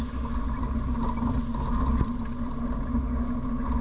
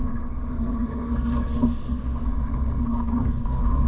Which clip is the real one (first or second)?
first